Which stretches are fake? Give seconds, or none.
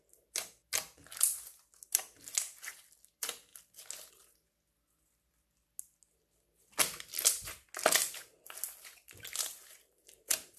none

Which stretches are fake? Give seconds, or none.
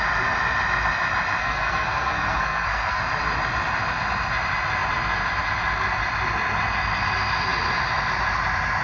1.4-3.0 (codec, SNAC)